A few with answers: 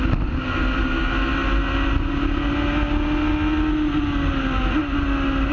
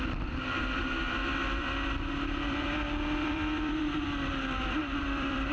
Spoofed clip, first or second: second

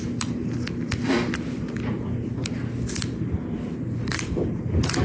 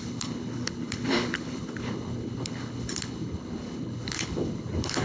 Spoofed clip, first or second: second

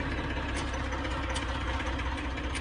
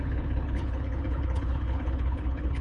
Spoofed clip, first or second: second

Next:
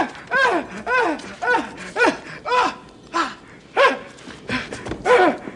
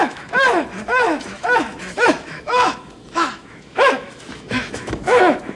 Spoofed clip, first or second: second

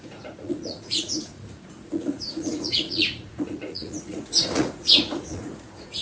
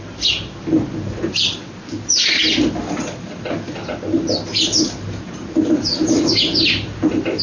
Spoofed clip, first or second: first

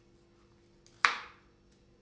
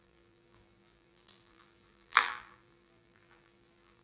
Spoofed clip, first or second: second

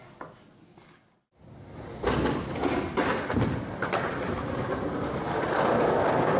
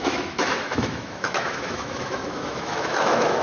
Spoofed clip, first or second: second